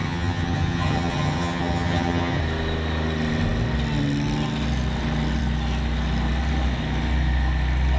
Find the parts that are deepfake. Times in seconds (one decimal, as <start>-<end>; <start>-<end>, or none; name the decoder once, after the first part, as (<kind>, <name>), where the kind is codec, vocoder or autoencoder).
0.0-2.4 (vocoder, HiFi-GAN)

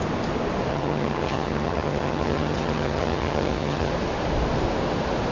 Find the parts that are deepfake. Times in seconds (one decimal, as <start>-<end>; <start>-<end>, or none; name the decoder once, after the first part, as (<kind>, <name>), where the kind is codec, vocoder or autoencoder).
0.7-3.9 (vocoder, HiFi-GAN)

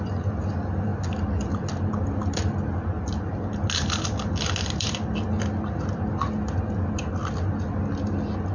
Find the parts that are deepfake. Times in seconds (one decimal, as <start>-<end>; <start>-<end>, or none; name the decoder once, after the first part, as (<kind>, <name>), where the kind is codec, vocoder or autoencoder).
none

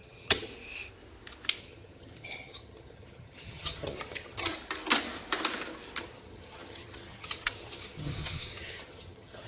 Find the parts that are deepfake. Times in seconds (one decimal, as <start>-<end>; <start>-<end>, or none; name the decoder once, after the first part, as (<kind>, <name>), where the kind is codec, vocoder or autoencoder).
0.0-0.5 (vocoder, HiFi-GAN); 1.6-4.5; 6.0-9.5

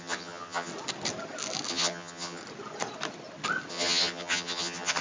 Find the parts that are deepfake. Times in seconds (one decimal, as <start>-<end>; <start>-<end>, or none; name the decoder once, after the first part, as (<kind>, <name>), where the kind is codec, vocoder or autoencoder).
0.0-0.7 (vocoder, HiFi-GAN); 1.7-2.4; 3.7-5.0

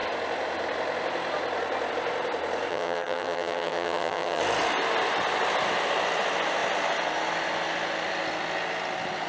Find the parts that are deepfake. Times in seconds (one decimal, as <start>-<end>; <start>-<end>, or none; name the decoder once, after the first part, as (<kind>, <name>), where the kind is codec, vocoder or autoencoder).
2.7-4.4 (vocoder, HiFi-GAN)

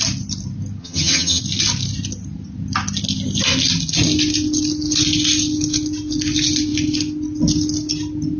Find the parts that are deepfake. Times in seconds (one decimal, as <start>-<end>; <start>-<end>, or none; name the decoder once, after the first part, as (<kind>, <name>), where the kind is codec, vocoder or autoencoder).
0.8-1.4 (vocoder, HiFi-GAN)

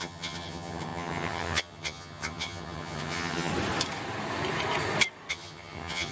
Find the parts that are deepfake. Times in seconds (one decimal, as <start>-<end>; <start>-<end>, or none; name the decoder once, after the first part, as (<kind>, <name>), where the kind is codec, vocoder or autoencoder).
0.0-3.5 (vocoder, HiFi-GAN); 5.3-6.1